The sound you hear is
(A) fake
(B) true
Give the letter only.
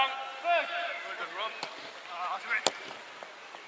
B